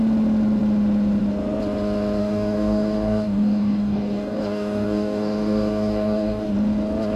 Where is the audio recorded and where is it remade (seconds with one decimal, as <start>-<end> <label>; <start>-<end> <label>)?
0.0-2.2 recorded; 2.2-6.5 remade; 6.5-7.2 recorded